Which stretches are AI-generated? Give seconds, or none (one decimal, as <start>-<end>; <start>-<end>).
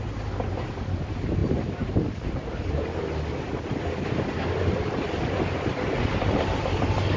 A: none